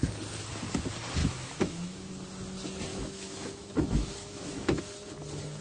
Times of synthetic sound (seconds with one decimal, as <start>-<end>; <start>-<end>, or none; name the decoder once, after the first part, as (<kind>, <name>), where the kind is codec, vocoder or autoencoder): 1.2-2.1 (autoencoder, DAC-VAE); 2.9-4.8